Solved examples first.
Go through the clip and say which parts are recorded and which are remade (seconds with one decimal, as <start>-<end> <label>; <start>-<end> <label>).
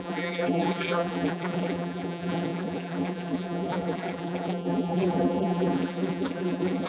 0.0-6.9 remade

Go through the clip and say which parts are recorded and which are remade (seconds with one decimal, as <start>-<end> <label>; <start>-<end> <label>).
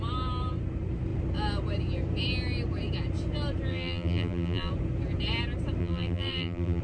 0.0-3.7 recorded; 3.7-4.7 remade; 4.7-5.8 recorded; 5.8-6.8 remade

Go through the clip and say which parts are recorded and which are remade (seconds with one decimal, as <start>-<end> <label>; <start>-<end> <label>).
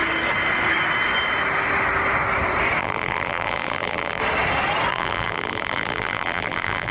0.0-2.8 recorded; 2.8-4.2 remade; 4.2-4.9 recorded; 4.9-6.9 remade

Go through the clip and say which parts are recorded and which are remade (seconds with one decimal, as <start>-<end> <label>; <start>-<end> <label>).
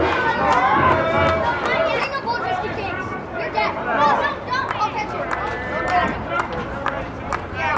0.0-1.7 recorded; 1.7-6.4 remade; 6.4-7.8 recorded